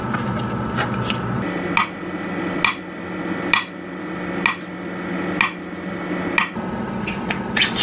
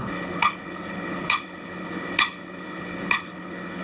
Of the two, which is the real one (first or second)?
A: first